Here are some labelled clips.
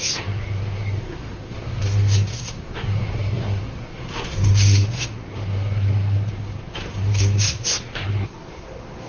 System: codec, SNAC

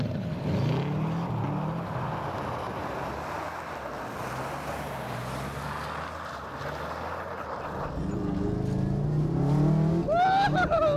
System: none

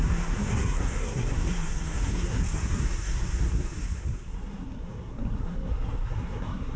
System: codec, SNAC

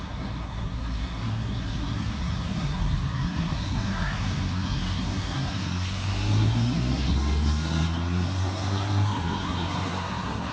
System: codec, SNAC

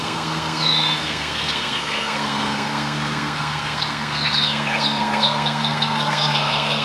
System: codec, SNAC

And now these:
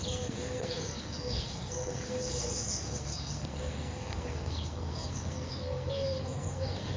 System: codec, SNAC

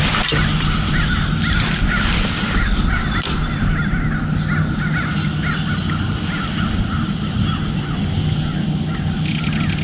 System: none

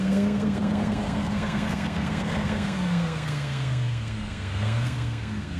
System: codec, SNAC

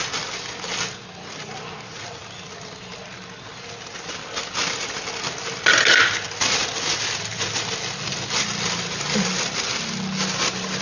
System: none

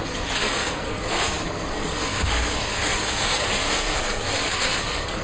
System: codec, SNAC